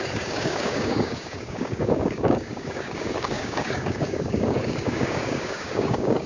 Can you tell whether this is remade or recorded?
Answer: remade